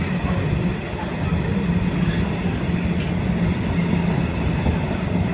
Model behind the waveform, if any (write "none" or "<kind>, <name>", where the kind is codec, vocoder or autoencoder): none